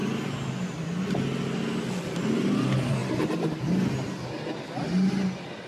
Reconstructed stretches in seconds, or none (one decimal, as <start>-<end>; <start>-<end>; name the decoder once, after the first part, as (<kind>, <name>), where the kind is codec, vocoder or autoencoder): none